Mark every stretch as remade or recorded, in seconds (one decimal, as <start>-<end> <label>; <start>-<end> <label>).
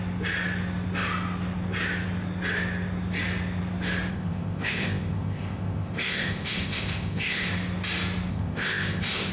0.0-4.1 recorded; 4.1-7.5 remade; 7.5-8.3 recorded; 8.3-9.3 remade